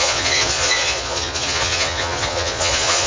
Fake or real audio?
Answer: fake